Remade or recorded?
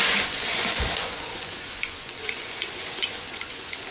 remade